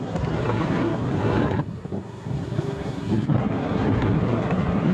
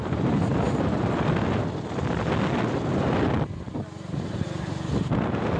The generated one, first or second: first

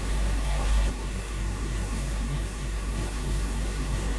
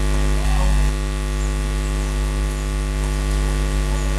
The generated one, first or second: first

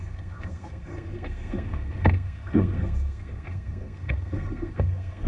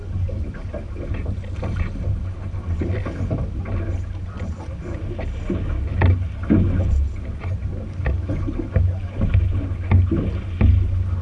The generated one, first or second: first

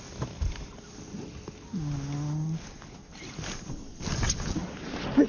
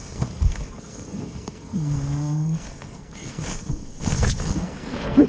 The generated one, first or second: second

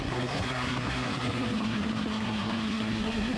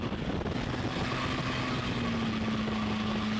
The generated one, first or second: first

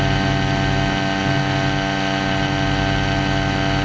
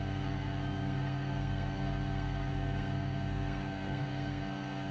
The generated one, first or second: second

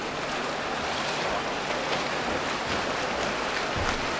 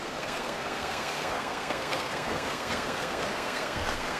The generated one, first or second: second